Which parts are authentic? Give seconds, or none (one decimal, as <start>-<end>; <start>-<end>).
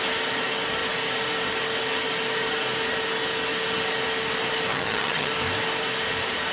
0.0-4.7; 5.3-6.5